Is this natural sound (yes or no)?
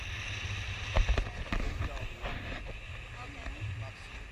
yes